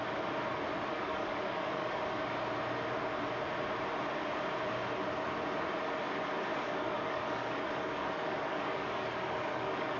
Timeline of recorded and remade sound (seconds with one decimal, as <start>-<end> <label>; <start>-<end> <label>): 0.0-0.9 recorded; 0.9-2.0 remade; 2.0-6.5 recorded; 6.5-10.0 remade